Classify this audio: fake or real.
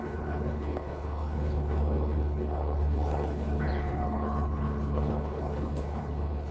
fake